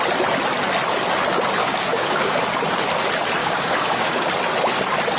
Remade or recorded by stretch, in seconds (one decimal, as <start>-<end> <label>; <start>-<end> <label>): 0.0-1.6 recorded; 1.6-2.4 remade; 2.4-3.4 recorded; 3.4-4.3 remade; 4.3-5.2 recorded